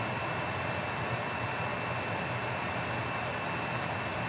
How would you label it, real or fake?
real